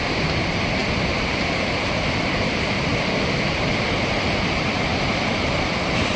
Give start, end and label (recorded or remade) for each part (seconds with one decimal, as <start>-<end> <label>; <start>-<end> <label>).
0.0-6.2 remade